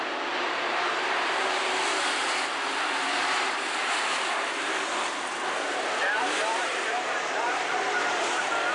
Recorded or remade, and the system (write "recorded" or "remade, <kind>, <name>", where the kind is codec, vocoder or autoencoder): remade, vocoder, BigVGAN v2